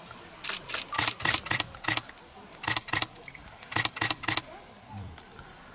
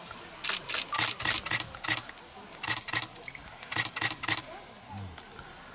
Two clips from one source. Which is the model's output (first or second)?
first